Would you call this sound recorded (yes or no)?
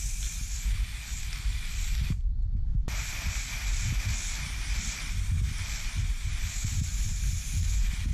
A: yes